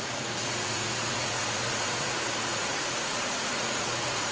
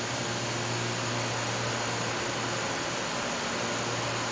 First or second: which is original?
second